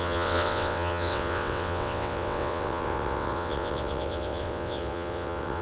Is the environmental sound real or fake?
fake